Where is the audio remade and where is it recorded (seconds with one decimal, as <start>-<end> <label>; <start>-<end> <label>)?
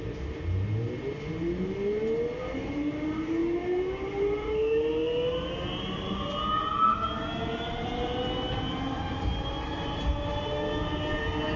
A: 0.0-11.6 recorded